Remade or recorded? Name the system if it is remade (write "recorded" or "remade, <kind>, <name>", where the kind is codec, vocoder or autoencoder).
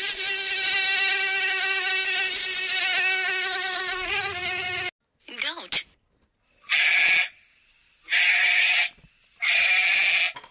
recorded